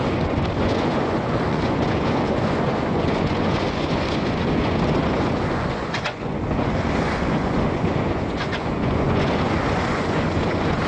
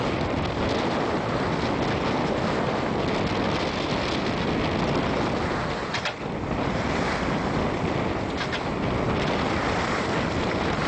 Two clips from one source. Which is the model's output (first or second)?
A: first